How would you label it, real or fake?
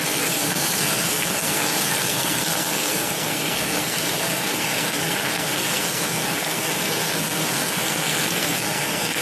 fake